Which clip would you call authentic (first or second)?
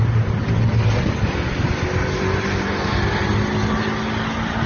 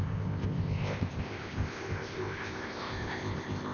first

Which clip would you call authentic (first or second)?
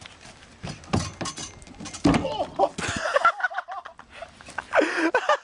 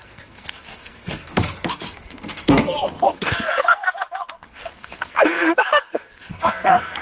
first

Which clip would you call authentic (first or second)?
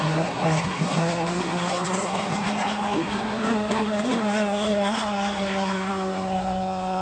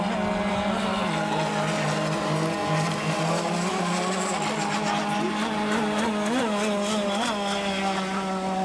second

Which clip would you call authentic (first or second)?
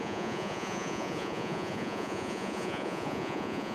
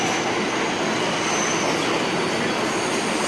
second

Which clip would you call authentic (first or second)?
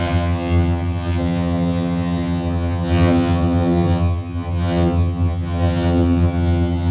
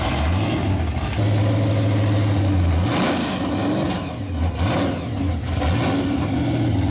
second